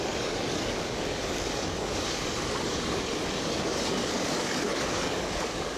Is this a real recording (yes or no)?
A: no